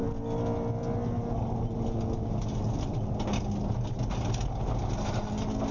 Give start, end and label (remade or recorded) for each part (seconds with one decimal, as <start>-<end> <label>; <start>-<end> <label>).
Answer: 0.0-5.7 recorded

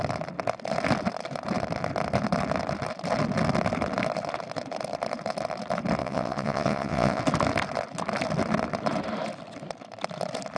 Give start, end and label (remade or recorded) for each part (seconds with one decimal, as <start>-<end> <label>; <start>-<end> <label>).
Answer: 0.0-6.0 recorded; 6.0-7.2 remade; 7.2-10.6 recorded

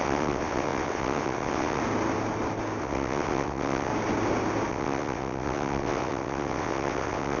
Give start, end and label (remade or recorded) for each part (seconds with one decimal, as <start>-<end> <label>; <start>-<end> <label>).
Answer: 0.0-1.8 remade; 1.8-2.8 recorded; 2.8-3.9 remade; 3.9-4.7 recorded; 4.7-7.4 remade

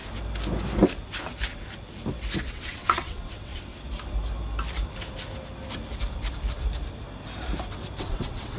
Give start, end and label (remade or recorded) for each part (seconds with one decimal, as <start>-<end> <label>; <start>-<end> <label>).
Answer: 0.0-2.5 recorded; 2.5-3.7 remade; 3.7-8.0 recorded; 8.0-8.6 remade